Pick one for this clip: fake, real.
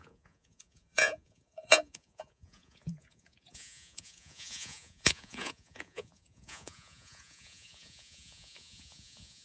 fake